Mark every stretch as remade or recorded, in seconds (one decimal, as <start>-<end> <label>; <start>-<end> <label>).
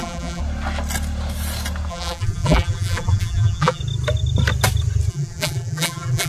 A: 0.0-0.4 remade; 0.4-1.9 recorded; 1.9-3.8 remade; 3.8-5.1 recorded; 5.1-6.3 remade